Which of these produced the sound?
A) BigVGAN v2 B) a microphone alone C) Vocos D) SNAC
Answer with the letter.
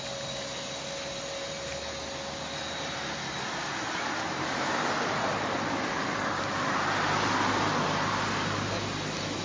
B